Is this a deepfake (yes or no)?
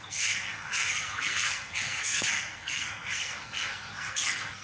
yes